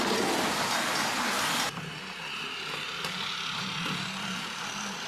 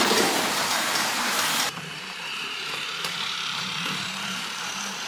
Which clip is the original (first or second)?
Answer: first